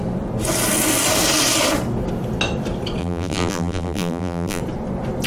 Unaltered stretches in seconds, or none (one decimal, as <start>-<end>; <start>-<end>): 0.0-3.0; 4.6-5.3